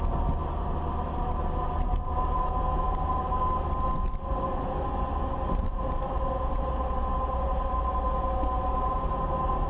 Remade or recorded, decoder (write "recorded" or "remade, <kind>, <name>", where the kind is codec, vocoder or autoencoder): recorded